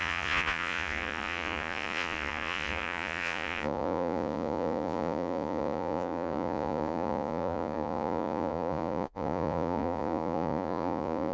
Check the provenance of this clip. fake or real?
fake